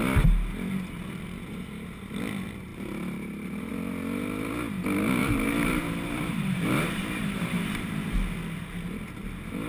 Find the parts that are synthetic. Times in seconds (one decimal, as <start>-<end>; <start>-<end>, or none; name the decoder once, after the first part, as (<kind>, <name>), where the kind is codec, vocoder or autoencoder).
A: 2.7-3.7 (vocoder, BigVGAN v2); 5.2-7.9